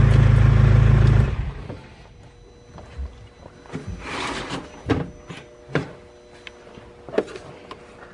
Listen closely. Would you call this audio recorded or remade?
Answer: recorded